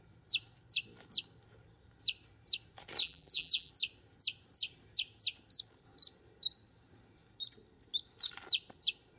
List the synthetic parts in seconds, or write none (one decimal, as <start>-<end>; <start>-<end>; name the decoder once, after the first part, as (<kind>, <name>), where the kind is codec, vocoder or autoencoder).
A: 3.0-3.7 (vocoder, BigVGAN v2)